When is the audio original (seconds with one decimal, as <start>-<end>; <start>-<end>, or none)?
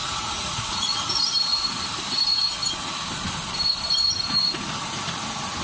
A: 1.1-5.6